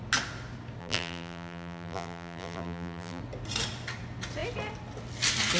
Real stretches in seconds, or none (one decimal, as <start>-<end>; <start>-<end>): 0.0-0.8; 3.2-5.6